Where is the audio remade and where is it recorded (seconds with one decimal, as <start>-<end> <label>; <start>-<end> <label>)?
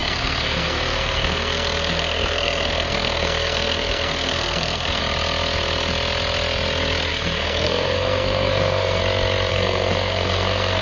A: 0.0-5.0 remade; 5.0-7.1 recorded; 7.1-9.0 remade; 9.0-9.5 recorded; 9.5-10.8 remade